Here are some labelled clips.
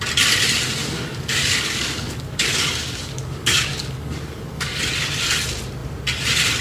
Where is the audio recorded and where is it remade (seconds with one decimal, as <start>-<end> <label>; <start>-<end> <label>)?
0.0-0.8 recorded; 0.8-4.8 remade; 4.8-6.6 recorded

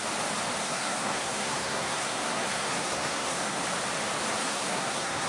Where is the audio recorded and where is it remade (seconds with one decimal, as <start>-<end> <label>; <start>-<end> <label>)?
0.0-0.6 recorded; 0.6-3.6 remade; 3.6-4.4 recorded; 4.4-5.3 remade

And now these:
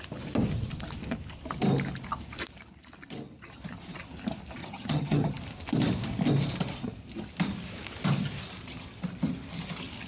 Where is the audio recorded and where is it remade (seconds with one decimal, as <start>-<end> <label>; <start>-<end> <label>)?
0.0-4.6 recorded; 4.6-5.3 remade; 5.3-10.1 recorded

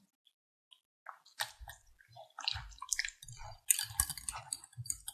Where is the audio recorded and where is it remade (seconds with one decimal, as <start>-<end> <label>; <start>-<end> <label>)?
0.0-5.1 recorded